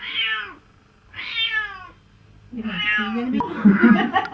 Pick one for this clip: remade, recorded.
recorded